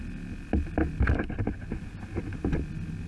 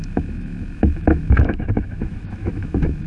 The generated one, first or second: second